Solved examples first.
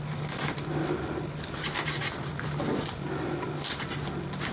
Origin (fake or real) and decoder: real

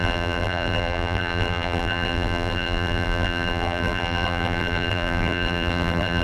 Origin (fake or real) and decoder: fake, vocoder, BigVGAN v2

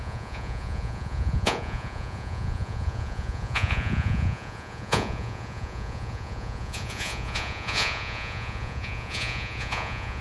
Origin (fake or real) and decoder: fake, vocoder, Vocos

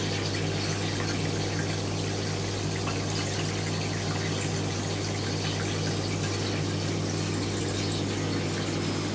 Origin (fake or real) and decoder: real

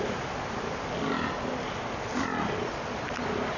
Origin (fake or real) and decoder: real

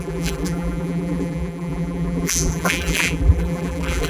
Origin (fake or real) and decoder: fake, vocoder, BigVGAN v2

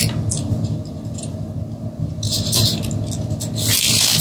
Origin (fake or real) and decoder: real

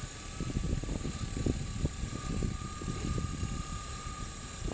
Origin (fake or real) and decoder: real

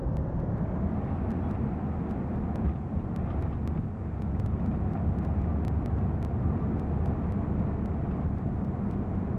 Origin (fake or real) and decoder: real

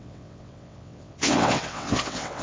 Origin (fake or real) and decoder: fake, vocoder, WaveNeXt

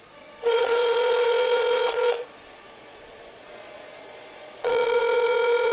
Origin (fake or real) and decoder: fake, vocoder, Vocos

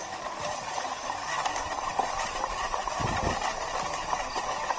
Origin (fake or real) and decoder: real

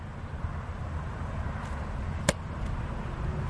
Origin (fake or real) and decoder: real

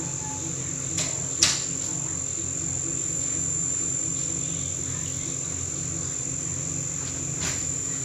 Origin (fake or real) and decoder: real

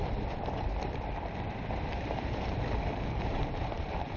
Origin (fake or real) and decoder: fake, vocoder, BigVGAN v2